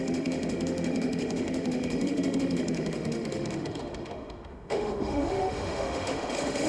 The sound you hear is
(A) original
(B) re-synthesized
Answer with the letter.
B